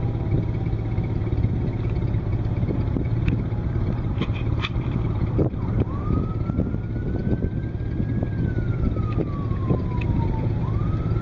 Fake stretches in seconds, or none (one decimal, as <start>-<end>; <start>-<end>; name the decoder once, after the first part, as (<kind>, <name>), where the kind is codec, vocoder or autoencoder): 2.3-5.7 (vocoder, BigVGAN v2)